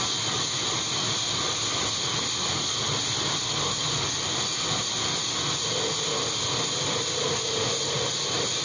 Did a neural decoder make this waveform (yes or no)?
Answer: no